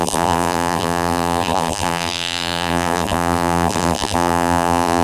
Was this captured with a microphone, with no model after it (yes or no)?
no